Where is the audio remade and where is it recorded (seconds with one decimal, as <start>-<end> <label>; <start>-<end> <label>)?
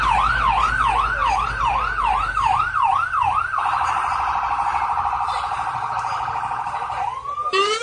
0.0-1.2 recorded; 1.2-5.9 remade; 5.9-7.8 recorded